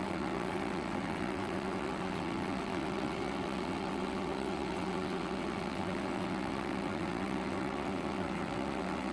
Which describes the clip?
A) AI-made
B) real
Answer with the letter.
A